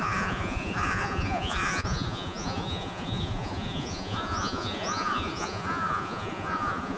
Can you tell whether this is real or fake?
fake